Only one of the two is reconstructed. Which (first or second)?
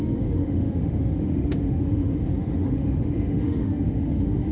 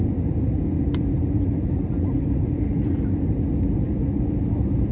first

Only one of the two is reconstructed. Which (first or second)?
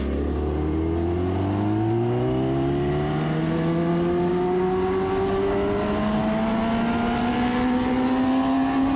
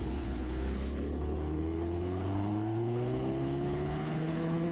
second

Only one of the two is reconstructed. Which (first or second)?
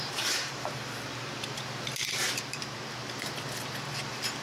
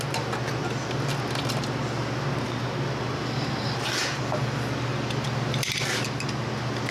first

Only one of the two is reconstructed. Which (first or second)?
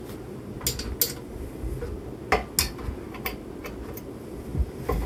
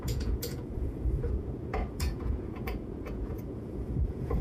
second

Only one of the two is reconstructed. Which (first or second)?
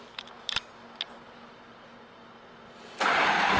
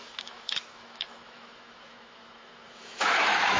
second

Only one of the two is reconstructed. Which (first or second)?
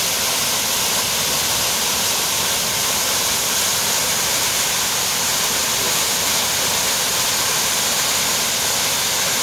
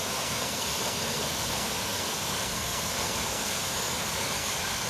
second